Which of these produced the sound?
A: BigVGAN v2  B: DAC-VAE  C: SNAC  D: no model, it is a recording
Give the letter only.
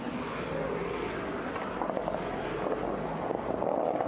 D